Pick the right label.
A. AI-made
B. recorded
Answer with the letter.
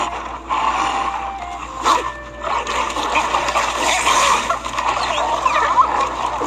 B